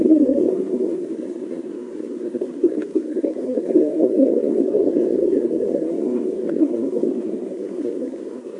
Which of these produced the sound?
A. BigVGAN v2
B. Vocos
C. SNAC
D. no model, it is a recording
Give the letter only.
C